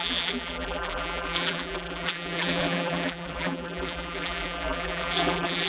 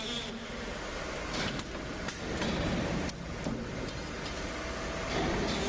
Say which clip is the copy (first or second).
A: first